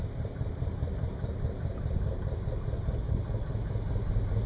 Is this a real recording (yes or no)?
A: yes